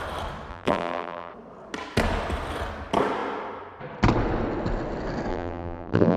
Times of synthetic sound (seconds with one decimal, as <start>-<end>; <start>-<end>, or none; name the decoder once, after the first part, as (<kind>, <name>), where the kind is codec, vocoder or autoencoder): 0.5-1.3 (vocoder, BigVGAN v2); 5.3-6.2